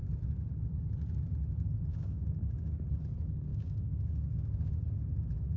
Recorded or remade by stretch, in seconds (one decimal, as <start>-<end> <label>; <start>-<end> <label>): 0.0-1.9 recorded; 1.9-2.7 remade; 2.7-3.5 recorded; 3.5-4.7 remade; 4.7-5.6 recorded